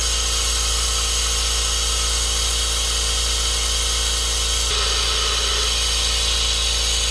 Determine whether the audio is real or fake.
real